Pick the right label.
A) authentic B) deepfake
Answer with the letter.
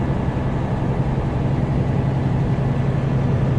A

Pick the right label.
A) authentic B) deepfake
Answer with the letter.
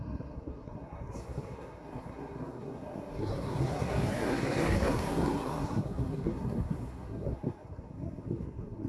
B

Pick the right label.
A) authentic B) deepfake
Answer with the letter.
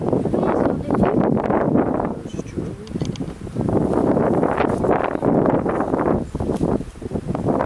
A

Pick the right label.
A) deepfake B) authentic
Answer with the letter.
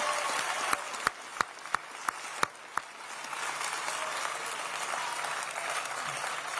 B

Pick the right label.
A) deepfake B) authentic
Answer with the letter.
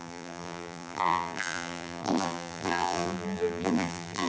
A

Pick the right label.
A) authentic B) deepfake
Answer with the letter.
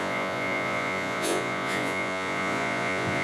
B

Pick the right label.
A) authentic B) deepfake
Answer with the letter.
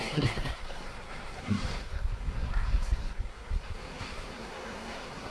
B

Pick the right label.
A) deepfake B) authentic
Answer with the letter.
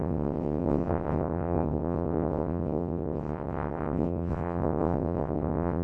A